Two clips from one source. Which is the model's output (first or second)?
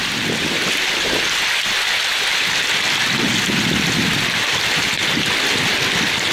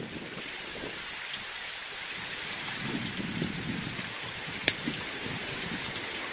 second